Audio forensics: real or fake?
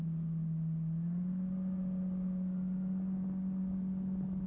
real